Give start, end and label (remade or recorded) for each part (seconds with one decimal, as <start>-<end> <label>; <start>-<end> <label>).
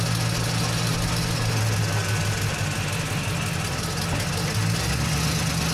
0.0-5.7 recorded